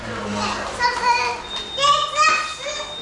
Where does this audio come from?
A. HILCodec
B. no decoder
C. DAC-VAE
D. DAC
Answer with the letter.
B